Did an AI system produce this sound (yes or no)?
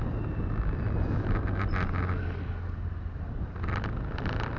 no